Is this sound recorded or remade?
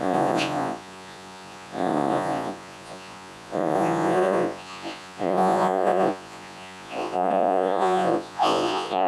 remade